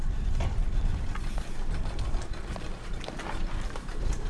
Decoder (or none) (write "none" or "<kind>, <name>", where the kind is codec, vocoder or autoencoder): vocoder, BigVGAN v2